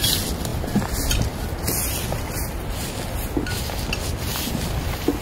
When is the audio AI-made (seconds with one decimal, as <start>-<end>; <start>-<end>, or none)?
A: none